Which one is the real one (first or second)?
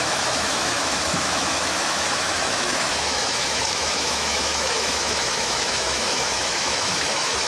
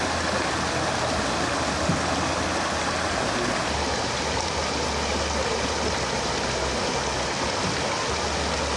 second